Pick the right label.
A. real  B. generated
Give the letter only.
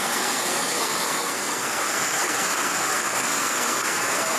B